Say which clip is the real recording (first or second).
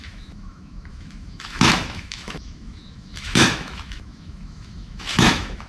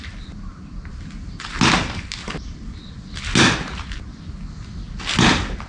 second